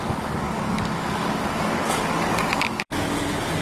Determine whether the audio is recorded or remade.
remade